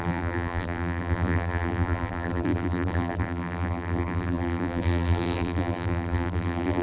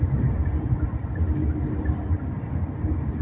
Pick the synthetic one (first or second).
first